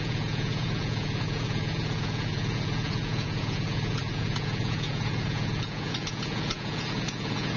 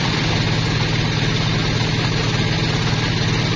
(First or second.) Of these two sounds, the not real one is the first